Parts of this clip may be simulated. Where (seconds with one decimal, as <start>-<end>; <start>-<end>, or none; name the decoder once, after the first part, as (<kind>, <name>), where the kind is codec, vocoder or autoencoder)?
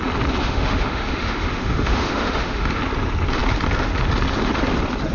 0.4-2.8 (autoencoder, DAC-VAE)